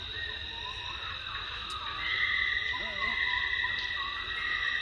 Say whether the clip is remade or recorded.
recorded